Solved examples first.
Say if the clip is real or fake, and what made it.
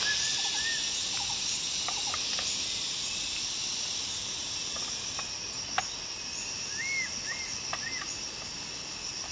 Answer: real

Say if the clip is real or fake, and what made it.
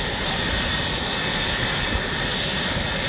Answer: real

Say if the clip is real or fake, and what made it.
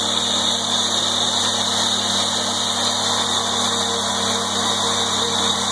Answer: real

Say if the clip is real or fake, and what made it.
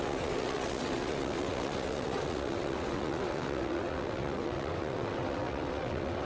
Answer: fake, vocoder, WaveNeXt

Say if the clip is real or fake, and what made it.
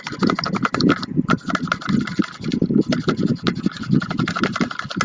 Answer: real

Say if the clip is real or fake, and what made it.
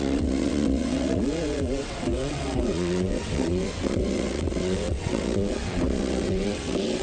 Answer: fake, vocoder, WaveNeXt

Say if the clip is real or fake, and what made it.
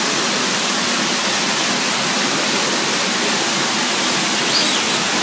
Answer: real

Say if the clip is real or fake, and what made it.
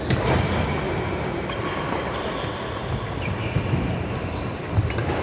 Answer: real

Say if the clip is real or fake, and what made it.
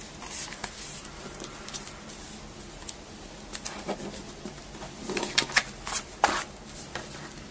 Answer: real